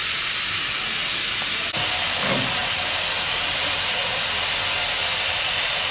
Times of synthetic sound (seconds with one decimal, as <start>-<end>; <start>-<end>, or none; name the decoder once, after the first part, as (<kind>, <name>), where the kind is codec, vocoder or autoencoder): 0.0-0.6 (vocoder, BigVGAN v2); 2.6-5.9